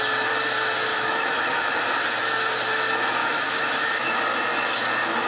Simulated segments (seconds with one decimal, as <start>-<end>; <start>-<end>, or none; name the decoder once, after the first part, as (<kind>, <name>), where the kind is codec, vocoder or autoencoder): 0.9-1.8 (autoencoder, DAC-VAE); 3.2-4.2